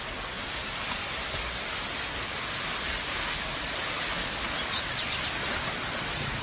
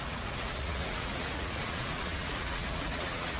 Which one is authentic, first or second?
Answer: first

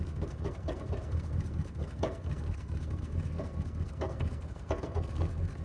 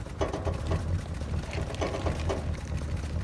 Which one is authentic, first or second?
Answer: second